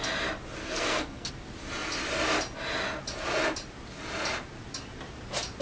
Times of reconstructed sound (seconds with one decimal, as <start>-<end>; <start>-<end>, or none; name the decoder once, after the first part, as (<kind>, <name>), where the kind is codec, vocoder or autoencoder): 0.6-1.3 (codec, SNAC)